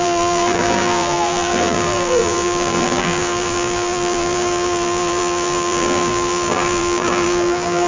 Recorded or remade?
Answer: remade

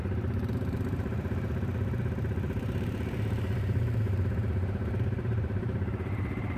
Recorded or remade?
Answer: remade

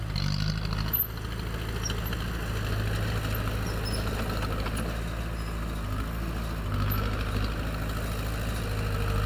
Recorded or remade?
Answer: recorded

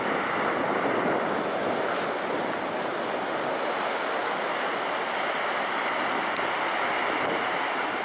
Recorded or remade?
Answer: recorded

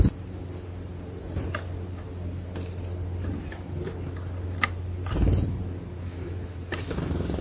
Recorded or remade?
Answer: recorded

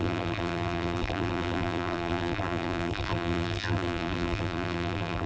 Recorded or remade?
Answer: remade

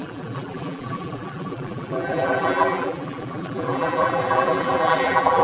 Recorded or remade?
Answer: remade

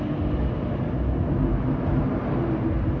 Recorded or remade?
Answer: recorded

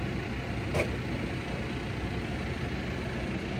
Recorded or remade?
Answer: recorded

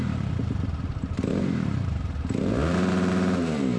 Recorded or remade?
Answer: remade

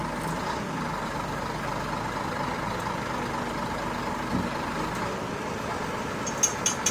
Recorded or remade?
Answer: recorded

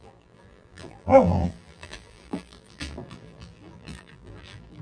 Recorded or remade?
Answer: remade